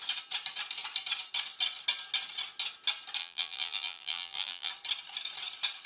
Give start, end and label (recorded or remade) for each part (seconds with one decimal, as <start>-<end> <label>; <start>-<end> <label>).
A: 0.0-3.2 recorded; 3.2-4.7 remade; 4.7-5.9 recorded